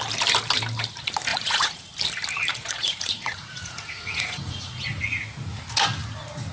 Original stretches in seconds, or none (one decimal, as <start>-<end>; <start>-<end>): 0.0-1.3; 1.9-2.5; 4.9-6.5

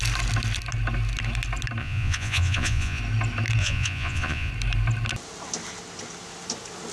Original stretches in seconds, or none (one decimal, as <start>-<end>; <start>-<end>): 0.0-1.8; 3.0-3.6; 4.5-6.9